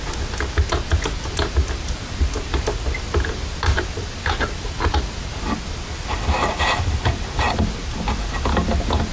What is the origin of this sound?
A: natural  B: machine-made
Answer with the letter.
A